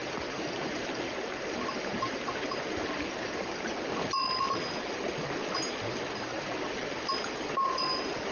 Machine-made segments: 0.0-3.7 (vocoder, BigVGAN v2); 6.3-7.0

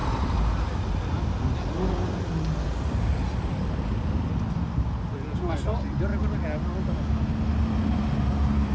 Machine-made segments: none

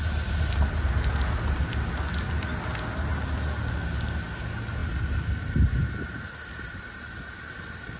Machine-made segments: none

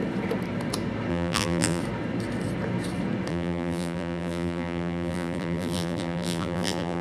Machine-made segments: 1.1-1.8 (vocoder, BigVGAN v2); 3.3-7.0